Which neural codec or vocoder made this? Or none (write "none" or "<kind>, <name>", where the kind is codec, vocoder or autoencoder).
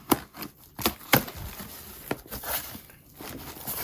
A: none